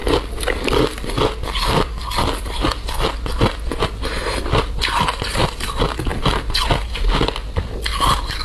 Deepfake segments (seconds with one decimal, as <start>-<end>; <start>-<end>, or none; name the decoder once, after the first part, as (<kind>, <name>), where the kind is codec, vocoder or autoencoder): none